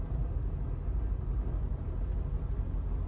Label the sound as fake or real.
real